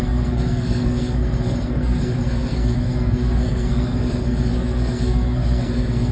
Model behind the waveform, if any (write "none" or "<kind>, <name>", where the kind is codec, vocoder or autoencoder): codec, SNAC